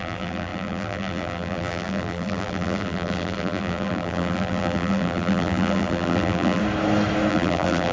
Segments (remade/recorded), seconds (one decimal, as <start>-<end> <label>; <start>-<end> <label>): 0.0-6.6 remade; 6.6-7.3 recorded; 7.3-7.9 remade